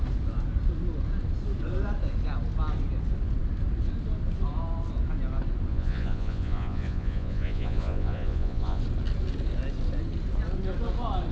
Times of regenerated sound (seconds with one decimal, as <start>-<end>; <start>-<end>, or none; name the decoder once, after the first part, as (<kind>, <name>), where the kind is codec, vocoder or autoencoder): 5.7-8.8 (vocoder, Vocos)